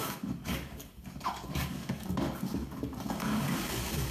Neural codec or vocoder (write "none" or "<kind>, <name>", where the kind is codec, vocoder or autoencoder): codec, DAC